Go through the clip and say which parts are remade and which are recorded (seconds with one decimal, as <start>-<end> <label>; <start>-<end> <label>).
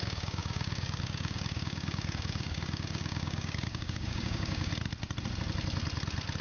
0.0-4.7 remade; 4.7-6.4 recorded